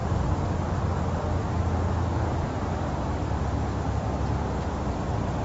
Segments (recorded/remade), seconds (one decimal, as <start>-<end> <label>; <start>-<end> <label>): 0.0-5.4 recorded